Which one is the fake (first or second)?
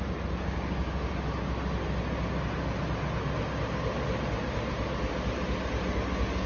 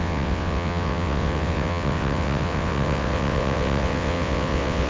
second